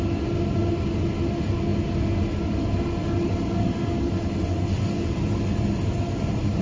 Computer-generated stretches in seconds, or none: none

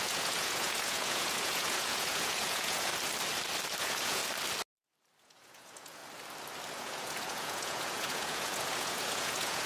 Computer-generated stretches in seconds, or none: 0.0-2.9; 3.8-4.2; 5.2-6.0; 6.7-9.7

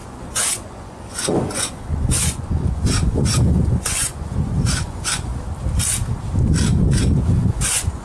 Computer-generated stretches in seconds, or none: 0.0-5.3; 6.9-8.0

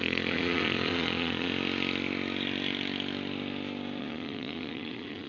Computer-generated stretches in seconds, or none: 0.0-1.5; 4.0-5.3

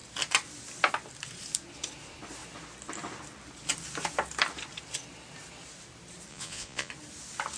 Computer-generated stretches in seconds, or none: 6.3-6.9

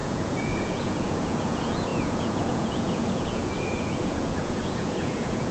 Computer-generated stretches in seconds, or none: 0.0-5.5

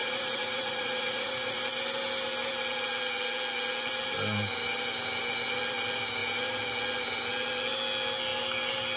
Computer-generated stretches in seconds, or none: 0.0-1.6